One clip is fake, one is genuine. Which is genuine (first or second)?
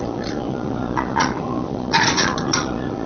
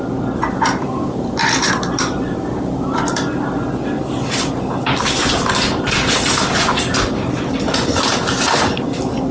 second